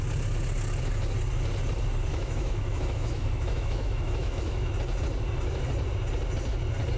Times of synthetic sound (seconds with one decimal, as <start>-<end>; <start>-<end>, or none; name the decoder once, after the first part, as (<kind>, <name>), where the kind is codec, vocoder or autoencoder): 2.1-4.7 (autoencoder, DAC-VAE)